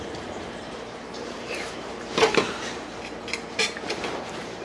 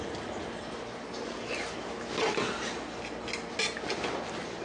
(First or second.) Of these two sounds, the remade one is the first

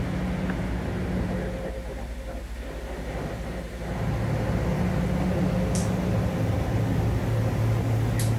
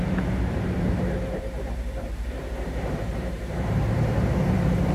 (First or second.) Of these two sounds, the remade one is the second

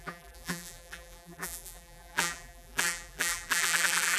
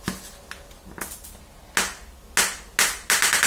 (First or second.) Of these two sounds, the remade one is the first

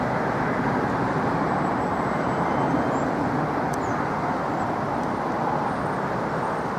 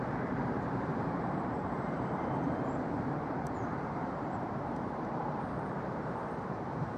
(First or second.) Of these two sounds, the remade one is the second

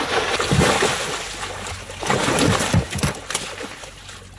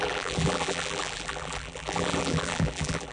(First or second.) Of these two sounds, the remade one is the second